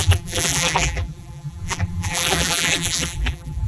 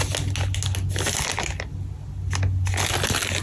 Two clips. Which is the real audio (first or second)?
second